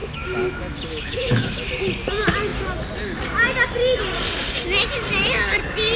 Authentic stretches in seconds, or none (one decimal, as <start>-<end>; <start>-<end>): 1.7-6.0